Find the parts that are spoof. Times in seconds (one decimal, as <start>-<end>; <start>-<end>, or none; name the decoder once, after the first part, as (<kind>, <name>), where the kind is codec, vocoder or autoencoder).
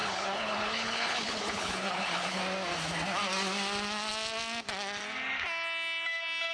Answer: 0.0-2.4 (codec, HILCodec)